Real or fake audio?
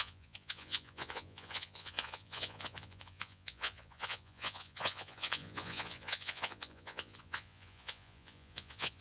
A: fake